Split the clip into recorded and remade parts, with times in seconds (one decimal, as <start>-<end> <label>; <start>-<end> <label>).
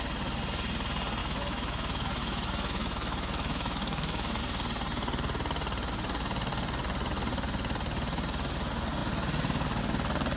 0.0-1.2 recorded; 1.2-4.4 remade; 4.4-10.4 recorded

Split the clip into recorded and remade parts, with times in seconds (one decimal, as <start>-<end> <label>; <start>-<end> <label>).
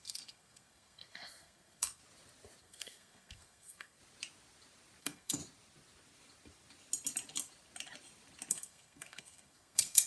0.0-2.0 remade; 2.0-2.6 recorded; 2.6-4.0 remade; 4.0-5.0 recorded; 5.0-5.4 remade; 5.4-8.5 recorded; 8.5-10.1 remade